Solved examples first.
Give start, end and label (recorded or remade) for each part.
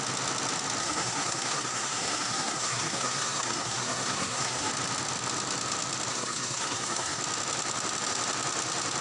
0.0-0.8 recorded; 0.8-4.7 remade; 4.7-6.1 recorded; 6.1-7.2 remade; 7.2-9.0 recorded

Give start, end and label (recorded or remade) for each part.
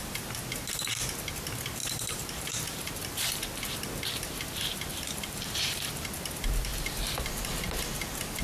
0.0-1.8 recorded; 1.8-2.9 remade; 2.9-4.9 recorded; 4.9-5.8 remade; 5.8-8.4 recorded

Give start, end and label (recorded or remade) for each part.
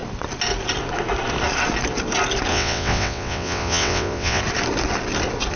0.0-2.5 recorded; 2.5-4.4 remade; 4.4-5.6 recorded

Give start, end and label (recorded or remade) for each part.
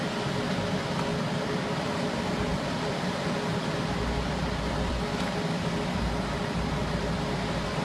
0.0-7.8 remade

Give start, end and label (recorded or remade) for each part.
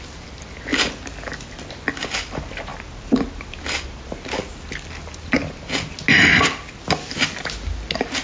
0.0-8.2 recorded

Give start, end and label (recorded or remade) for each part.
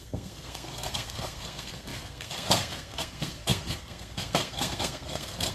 0.0-5.5 remade